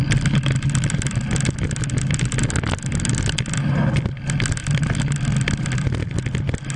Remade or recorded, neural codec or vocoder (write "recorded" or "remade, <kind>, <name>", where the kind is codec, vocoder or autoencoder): recorded